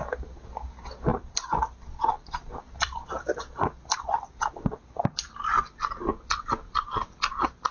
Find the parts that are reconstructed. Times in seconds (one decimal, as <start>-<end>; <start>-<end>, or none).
1.1-5.3